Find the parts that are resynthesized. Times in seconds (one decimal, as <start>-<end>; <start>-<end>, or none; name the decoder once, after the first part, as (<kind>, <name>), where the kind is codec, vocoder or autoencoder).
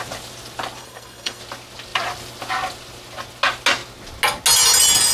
0.8-1.4 (codec, SNAC)